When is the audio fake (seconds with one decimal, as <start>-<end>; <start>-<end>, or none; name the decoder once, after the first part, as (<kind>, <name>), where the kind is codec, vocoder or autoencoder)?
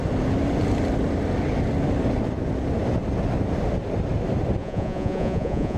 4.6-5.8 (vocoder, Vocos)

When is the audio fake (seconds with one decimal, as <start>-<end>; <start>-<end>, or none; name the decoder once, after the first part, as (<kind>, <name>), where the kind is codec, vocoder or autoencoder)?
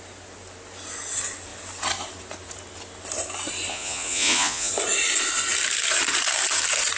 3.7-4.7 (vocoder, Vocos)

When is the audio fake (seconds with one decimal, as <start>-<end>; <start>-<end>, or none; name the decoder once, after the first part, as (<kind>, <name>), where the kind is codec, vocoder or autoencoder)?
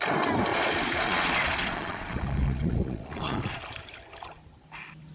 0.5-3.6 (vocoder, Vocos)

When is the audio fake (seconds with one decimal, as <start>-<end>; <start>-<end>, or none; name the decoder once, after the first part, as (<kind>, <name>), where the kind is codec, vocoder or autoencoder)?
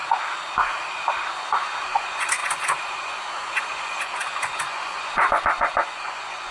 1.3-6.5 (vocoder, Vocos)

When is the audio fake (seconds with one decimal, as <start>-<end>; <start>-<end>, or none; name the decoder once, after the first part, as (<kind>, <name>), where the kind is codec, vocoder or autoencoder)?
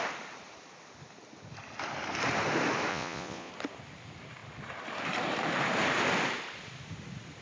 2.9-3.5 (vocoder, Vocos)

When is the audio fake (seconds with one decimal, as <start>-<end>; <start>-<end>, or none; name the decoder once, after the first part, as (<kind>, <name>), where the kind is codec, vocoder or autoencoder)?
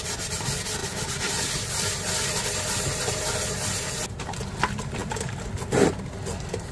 none